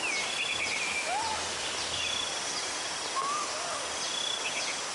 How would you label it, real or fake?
real